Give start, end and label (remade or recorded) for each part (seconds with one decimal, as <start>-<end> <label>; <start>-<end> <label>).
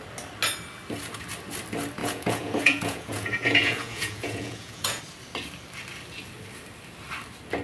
0.0-2.0 recorded; 2.0-5.0 remade; 5.0-7.6 recorded